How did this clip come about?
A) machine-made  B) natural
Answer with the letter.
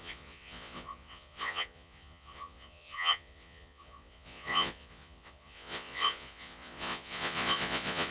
A